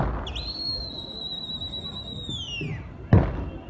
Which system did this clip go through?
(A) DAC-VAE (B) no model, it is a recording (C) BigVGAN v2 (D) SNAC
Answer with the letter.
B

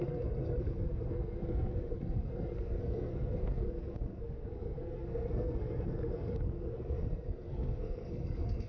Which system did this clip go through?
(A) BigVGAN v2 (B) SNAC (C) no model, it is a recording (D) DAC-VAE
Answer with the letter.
B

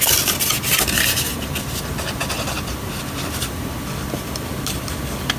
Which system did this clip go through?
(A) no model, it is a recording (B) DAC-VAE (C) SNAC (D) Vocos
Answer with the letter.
A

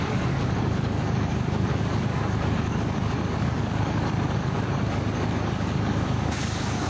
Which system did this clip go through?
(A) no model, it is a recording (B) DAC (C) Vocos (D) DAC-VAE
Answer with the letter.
B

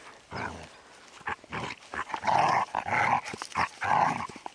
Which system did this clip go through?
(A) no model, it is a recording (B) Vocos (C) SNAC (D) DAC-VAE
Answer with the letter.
A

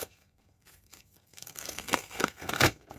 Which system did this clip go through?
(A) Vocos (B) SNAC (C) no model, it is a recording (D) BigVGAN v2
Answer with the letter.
B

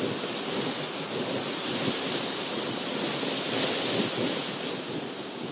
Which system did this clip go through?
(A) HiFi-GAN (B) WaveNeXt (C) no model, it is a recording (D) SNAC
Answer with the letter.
C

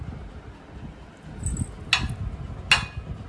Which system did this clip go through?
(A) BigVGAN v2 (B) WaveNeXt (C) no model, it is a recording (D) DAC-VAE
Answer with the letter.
C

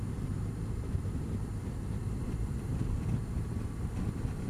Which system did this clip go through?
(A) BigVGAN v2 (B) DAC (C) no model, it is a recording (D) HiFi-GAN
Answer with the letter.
A